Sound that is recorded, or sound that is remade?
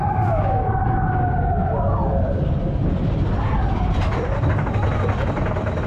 recorded